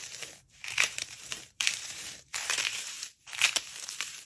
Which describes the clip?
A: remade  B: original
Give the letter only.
A